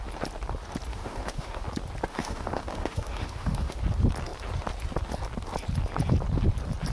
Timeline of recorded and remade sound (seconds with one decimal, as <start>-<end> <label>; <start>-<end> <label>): 0.0-0.9 recorded; 0.9-1.6 remade; 1.6-2.1 recorded; 2.1-3.8 remade; 3.8-6.9 recorded